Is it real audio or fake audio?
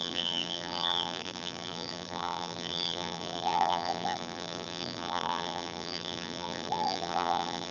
fake